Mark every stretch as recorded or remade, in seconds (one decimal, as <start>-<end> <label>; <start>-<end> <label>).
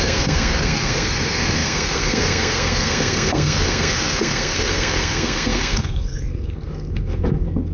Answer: 0.0-7.7 remade